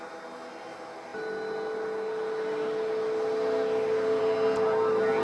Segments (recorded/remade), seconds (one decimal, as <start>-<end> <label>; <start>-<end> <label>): 0.0-5.2 recorded